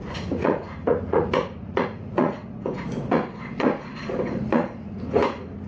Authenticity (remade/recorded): remade